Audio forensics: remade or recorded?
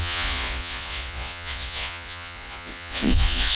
remade